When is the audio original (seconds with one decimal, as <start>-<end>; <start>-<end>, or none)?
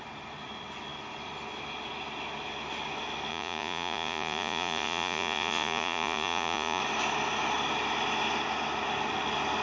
0.0-3.3; 6.8-9.6